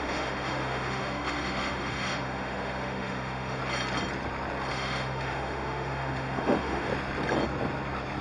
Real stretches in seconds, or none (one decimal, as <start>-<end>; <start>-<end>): 3.6-4.7; 6.9-8.2